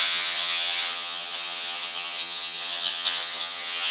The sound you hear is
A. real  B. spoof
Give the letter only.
B